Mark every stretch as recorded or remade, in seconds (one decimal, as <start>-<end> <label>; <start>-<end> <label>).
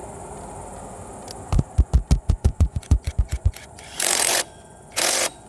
0.0-2.3 recorded; 2.3-5.5 remade